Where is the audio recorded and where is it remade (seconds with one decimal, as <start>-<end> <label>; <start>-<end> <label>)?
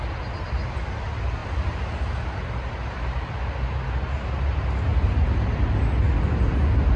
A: 0.0-7.0 recorded